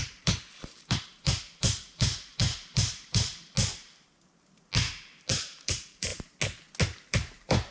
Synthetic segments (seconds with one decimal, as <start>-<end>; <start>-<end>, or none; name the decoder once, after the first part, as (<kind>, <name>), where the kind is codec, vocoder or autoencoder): 0.0-3.3 (vocoder, BigVGAN v2); 5.3-6.1; 7.1-7.7